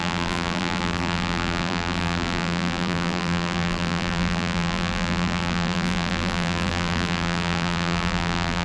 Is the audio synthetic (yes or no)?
yes